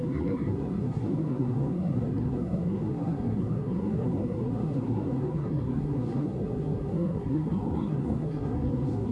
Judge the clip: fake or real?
fake